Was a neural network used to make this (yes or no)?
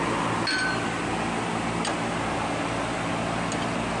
no